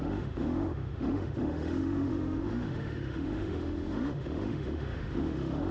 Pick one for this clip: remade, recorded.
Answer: remade